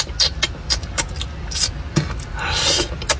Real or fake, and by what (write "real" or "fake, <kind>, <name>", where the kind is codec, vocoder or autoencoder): real